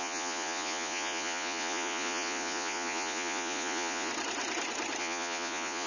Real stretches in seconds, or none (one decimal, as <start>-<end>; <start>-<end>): 4.1-5.0